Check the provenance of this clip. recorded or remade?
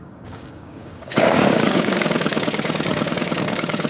remade